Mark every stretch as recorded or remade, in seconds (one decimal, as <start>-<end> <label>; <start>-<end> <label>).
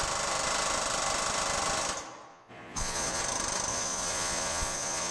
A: 0.0-2.3 recorded; 2.3-3.2 remade; 3.2-3.7 recorded; 3.7-5.1 remade